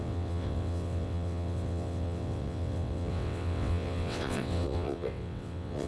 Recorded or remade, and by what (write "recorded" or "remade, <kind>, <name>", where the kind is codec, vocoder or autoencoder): remade, vocoder, WaveNeXt